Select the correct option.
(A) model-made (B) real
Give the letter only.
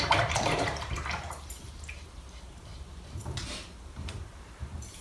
A